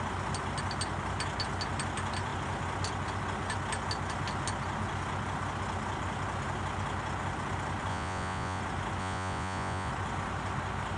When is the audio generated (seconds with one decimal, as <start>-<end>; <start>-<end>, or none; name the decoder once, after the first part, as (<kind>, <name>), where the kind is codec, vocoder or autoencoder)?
7.9-8.6 (vocoder, Vocos); 9.0-9.9